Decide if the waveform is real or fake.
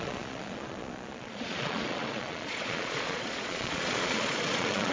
fake